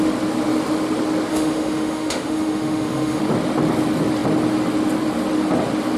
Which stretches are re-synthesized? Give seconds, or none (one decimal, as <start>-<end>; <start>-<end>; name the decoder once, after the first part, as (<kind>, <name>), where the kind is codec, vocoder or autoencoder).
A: 1.3-3.2 (autoencoder, DAC-VAE)